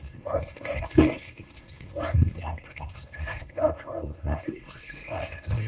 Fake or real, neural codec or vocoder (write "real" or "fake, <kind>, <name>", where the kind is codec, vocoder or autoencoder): fake, codec, SNAC